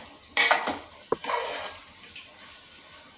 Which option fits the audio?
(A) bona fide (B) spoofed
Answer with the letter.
A